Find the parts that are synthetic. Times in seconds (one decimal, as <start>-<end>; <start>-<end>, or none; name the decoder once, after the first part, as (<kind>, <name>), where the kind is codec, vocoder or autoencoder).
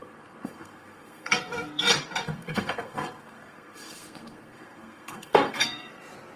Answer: 0.0-1.8 (codec, SNAC); 2.2-6.0